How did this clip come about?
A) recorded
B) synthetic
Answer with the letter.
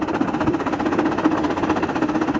A